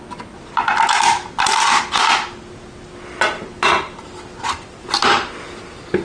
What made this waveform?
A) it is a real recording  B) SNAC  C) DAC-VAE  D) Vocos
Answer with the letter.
A